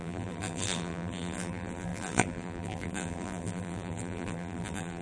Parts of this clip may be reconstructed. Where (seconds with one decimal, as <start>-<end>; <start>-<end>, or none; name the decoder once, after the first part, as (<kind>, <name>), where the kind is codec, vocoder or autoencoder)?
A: 0.0-5.0 (vocoder, BigVGAN v2)